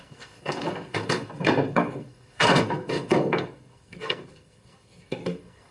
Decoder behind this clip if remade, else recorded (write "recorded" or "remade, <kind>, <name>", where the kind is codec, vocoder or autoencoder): remade, codec, SNAC